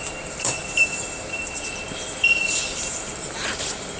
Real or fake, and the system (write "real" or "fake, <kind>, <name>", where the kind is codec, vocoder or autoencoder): fake, vocoder, BigVGAN v2